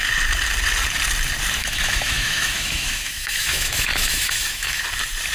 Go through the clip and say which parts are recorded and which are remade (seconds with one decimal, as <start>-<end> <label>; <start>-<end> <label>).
0.0-1.6 recorded; 1.6-4.8 remade; 4.8-5.3 recorded